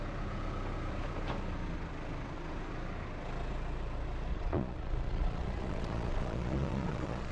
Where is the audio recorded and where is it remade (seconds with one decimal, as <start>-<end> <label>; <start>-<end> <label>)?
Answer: 0.0-4.3 recorded; 4.3-7.3 remade